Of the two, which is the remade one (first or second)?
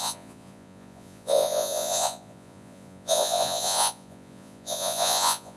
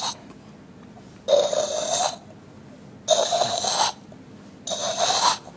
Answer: first